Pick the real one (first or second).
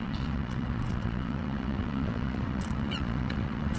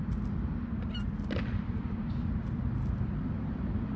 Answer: second